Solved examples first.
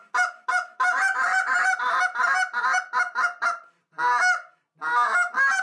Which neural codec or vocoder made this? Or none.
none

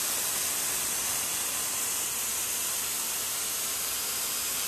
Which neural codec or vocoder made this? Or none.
vocoder, BigVGAN v2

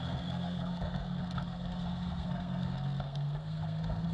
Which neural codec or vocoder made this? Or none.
codec, SNAC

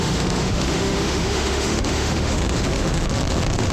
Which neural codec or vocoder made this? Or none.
autoencoder, DAC-VAE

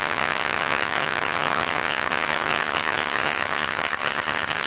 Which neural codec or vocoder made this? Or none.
vocoder, HiFi-GAN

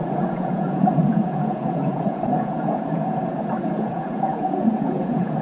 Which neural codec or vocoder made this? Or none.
vocoder, Vocos